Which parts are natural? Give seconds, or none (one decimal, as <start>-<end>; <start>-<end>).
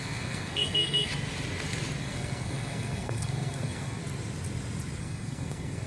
1.1-2.0; 4.0-5.0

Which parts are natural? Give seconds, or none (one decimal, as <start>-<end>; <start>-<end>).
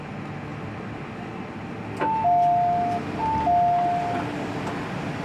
0.0-0.5; 1.1-5.2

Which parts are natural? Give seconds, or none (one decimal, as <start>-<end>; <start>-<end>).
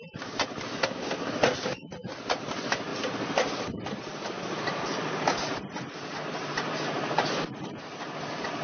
0.0-0.8; 1.3-8.6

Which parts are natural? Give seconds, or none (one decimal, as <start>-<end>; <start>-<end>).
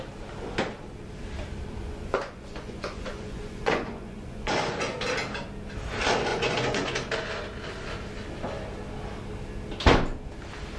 0.0-1.8; 5.0-6.3; 6.9-10.8